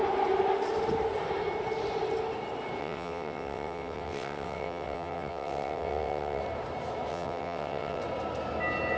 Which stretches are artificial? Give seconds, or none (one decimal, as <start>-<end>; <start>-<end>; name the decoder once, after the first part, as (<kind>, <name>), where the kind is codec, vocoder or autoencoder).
2.8-6.4 (vocoder, WaveNeXt); 7.1-8.0